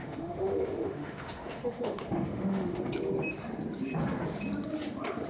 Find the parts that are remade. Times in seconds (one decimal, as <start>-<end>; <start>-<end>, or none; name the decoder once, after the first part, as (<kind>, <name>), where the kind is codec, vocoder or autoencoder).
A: 0.0-2.8 (autoencoder, DAC-VAE)